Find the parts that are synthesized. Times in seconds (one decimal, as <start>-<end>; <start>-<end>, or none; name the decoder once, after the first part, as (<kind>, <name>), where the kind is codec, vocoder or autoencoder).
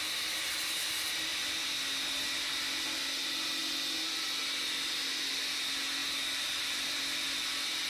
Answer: 6.0-7.0 (vocoder, BigVGAN v2)